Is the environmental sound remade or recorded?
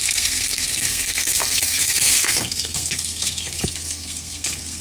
remade